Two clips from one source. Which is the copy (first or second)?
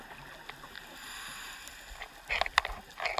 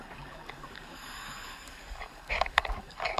second